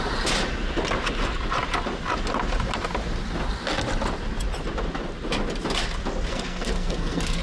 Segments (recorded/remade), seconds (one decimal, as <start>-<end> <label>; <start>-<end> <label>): 0.0-6.3 recorded; 6.3-7.4 remade